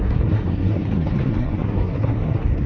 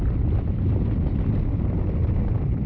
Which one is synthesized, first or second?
first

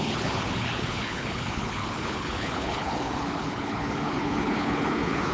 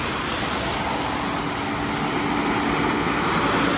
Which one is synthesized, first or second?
first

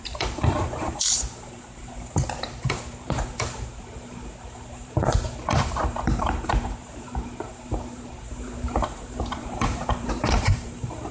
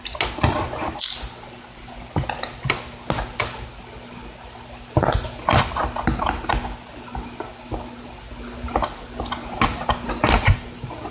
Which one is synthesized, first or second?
first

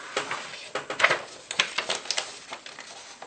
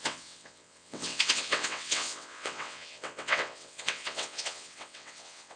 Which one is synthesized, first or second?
second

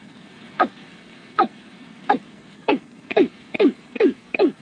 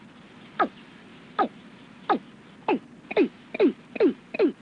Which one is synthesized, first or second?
first